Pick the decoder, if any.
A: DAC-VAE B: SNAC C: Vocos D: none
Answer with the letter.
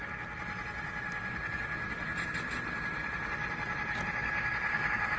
D